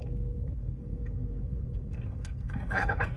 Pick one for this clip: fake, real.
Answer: fake